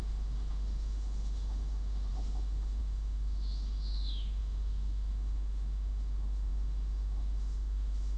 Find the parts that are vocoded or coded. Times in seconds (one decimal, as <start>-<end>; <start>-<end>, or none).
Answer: 0.0-8.2